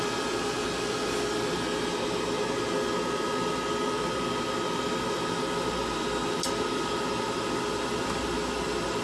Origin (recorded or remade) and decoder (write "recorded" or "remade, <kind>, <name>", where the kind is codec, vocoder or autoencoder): recorded